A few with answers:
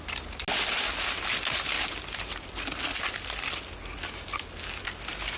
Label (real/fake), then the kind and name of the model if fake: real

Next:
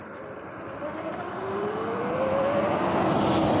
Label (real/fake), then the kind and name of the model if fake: real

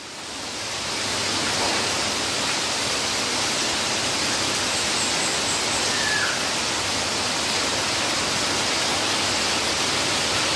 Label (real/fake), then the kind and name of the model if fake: real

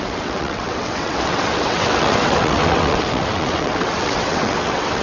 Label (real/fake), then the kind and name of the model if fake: fake, vocoder, WaveNeXt